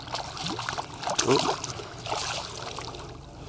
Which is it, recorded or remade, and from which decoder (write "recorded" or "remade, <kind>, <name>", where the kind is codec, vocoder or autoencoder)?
recorded